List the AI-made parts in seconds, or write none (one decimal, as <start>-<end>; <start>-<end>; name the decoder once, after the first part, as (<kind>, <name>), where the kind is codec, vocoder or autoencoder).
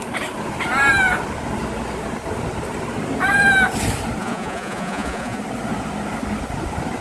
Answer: 4.2-5.4 (vocoder, Vocos)